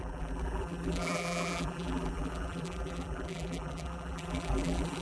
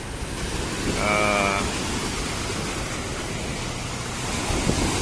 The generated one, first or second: first